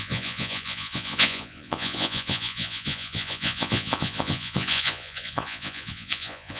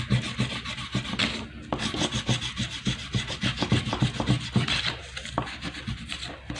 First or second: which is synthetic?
first